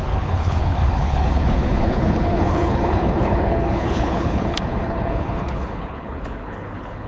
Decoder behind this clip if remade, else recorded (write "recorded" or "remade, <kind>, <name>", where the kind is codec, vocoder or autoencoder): remade, codec, HILCodec